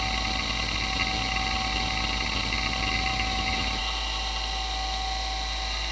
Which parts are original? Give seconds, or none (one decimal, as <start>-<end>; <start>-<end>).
0.0-3.1; 3.8-5.9